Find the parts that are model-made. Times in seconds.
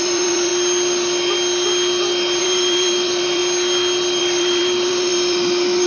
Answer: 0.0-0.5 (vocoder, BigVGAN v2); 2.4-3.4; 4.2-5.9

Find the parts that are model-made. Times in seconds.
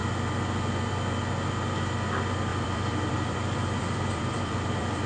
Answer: 2.5-5.1 (vocoder, BigVGAN v2)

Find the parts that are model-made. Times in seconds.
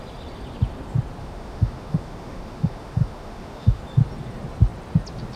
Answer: 1.2-3.8 (autoencoder, DAC-VAE)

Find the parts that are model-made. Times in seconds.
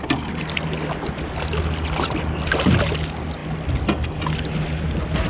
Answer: none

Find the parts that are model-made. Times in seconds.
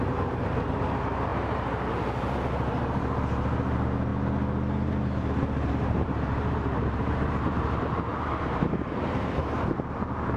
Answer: 0.0-4.1 (vocoder, BigVGAN v2); 5.7-10.4